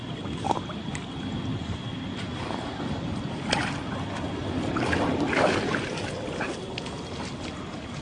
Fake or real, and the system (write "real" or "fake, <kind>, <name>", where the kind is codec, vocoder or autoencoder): real